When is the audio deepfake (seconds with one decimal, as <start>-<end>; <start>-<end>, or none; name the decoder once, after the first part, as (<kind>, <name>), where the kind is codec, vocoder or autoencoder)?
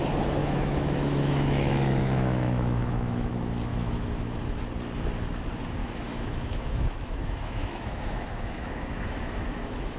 0.4-3.3 (autoencoder, DAC-VAE); 3.7-4.6; 5.8-10.0